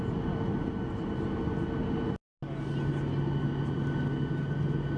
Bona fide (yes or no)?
yes